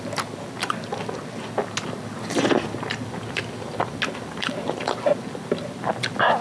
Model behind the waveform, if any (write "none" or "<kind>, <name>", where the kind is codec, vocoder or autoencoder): none